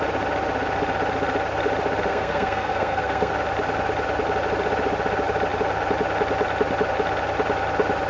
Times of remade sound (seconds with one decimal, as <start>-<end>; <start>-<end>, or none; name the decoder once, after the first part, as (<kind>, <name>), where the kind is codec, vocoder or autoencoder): 2.1-3.3 (codec, SNAC)